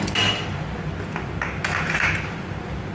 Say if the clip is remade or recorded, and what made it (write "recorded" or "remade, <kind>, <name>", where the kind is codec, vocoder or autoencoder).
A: recorded